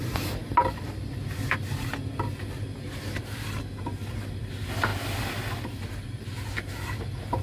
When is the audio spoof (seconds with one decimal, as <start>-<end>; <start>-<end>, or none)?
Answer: none